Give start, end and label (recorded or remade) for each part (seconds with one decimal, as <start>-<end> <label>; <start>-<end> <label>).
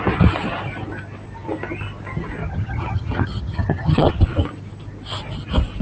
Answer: 0.0-2.4 recorded; 2.4-4.2 remade; 4.2-5.8 recorded